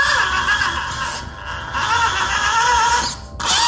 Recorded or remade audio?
recorded